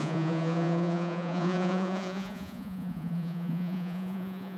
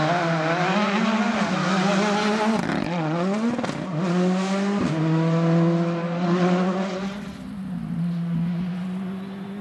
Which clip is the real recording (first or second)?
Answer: second